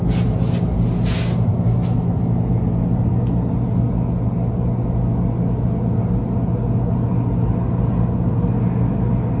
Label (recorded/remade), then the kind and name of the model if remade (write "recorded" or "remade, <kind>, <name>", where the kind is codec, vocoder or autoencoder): recorded